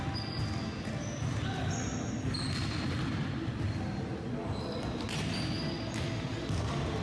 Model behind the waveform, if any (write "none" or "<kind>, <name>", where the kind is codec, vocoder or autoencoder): none